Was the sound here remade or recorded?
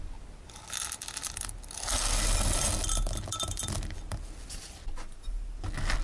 recorded